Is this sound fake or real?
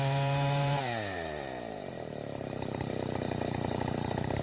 fake